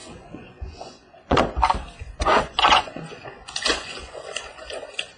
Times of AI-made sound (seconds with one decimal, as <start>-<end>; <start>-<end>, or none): 0.0-1.4; 2.0-5.2